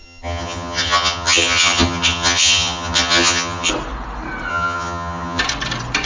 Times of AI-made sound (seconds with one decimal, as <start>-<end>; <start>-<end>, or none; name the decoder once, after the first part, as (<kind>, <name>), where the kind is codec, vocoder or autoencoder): 0.0-3.7 (vocoder, HiFi-GAN); 4.5-5.4